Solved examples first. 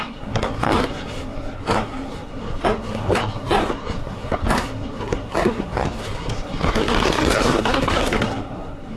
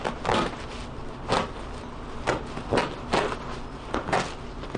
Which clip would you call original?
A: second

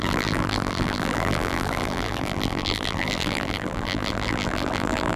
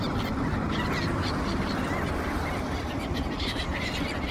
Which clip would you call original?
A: second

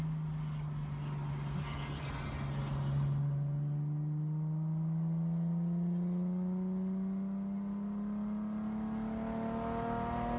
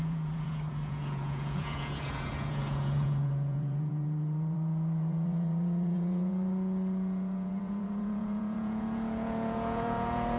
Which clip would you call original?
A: first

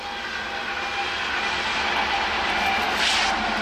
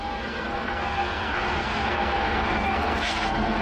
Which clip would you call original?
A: first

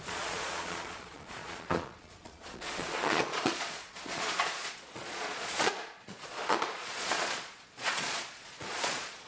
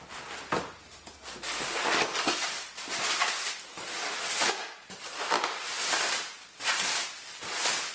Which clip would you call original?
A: second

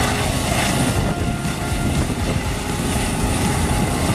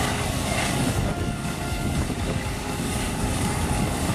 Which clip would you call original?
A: first